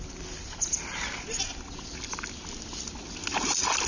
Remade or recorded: recorded